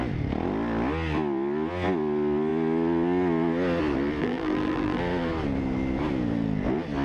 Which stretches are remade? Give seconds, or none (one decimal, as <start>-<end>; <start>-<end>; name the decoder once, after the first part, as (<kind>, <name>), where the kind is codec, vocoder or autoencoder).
4.2-5.0 (vocoder, BigVGAN v2)